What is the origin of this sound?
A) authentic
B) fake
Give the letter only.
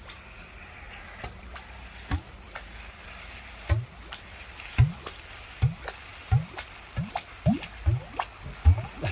A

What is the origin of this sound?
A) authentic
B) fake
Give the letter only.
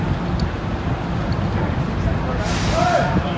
A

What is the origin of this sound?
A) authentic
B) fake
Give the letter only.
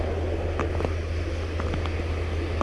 A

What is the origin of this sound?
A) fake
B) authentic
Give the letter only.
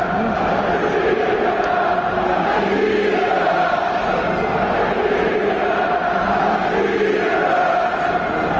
B